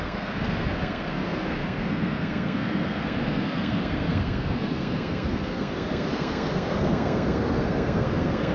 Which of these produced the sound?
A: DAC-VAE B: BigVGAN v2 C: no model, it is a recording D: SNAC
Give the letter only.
D